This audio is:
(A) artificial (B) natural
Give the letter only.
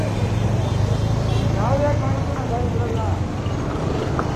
B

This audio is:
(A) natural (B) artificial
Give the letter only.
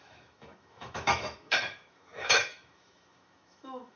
B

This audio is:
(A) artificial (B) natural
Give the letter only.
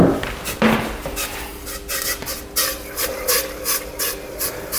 B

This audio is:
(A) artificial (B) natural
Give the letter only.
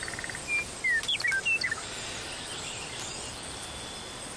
B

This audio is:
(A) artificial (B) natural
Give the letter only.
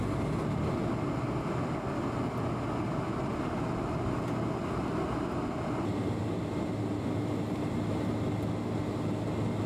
B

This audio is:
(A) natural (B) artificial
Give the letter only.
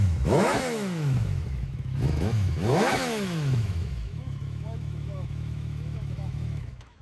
B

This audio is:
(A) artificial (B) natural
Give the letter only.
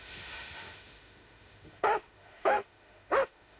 A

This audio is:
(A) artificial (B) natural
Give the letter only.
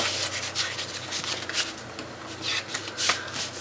B